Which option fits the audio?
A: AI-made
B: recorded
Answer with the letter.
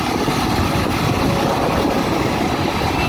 B